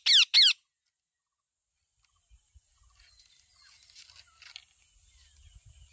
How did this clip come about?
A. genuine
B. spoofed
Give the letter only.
A